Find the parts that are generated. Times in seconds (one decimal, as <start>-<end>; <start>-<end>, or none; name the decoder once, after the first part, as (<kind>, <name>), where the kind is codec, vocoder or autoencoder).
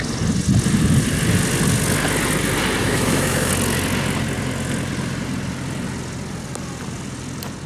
2.8-3.5 (autoencoder, DAC-VAE)